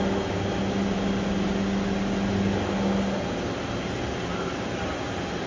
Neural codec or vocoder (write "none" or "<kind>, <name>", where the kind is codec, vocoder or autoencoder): none